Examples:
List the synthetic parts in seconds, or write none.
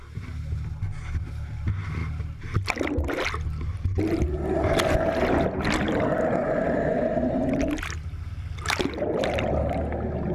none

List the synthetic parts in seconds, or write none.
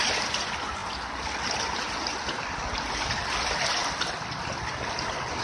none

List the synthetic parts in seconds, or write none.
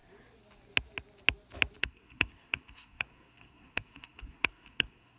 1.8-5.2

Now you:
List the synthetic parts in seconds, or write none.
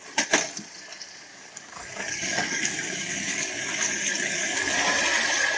1.3-4.7